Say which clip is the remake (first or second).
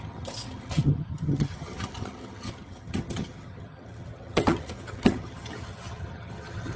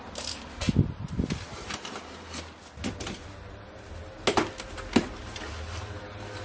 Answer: first